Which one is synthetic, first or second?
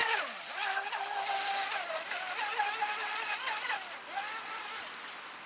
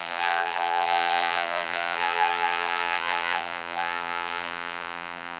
second